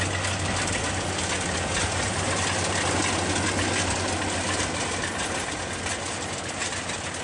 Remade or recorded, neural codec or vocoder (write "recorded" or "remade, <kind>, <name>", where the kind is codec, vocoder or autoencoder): recorded